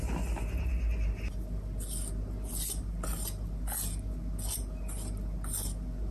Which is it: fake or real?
real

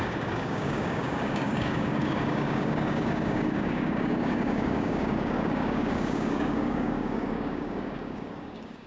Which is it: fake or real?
fake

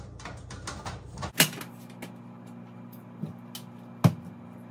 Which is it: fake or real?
real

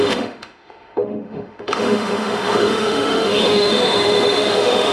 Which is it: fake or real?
fake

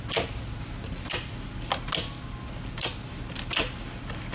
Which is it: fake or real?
real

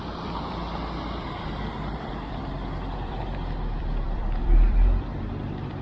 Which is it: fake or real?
fake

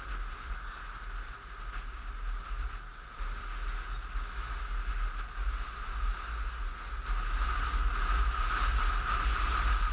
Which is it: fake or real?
real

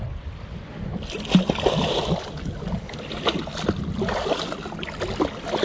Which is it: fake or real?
real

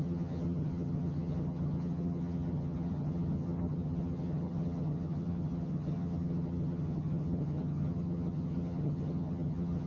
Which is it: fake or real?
fake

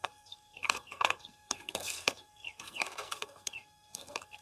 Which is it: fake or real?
fake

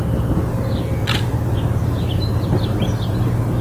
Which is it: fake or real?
real